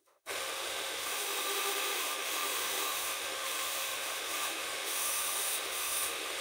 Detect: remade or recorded remade